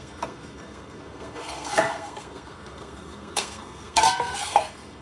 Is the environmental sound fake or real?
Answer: fake